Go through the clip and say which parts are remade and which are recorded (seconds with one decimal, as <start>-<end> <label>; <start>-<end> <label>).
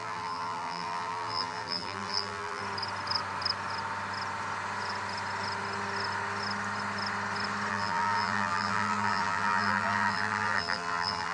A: 0.0-2.6 remade; 2.6-7.7 recorded; 7.7-11.3 remade